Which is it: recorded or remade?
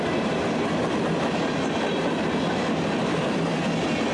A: recorded